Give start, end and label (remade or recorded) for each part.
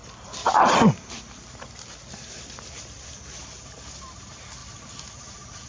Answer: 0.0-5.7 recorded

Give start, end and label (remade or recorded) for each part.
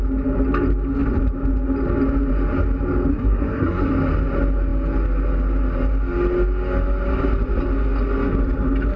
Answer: 0.0-3.1 recorded; 3.1-3.9 remade; 3.9-9.0 recorded